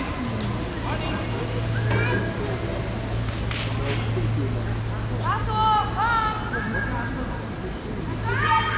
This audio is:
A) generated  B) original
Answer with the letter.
B